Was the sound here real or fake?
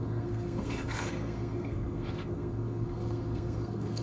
fake